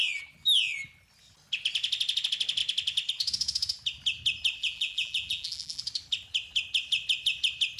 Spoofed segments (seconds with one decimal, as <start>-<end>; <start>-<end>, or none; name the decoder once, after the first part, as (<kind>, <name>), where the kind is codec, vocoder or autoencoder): 4.6-5.8 (vocoder, BigVGAN v2)